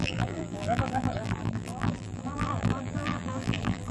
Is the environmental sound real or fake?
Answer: fake